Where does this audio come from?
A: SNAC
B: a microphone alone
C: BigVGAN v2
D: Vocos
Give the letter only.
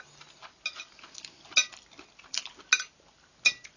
B